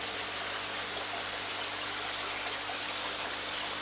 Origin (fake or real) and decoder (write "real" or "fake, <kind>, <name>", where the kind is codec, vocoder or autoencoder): real